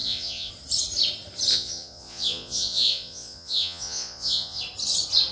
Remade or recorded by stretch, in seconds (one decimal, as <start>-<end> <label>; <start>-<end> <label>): 0.0-0.5 remade; 0.5-1.5 recorded; 1.5-4.6 remade; 4.6-5.3 recorded